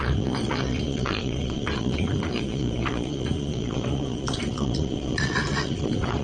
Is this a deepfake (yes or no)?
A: yes